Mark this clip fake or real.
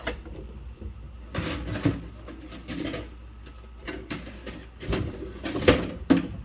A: real